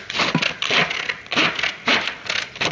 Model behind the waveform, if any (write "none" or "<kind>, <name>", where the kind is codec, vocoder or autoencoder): none